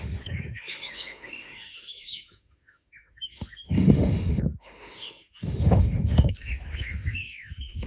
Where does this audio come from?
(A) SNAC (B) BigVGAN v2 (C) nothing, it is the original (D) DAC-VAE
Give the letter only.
D